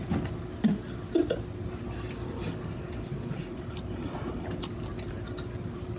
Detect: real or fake real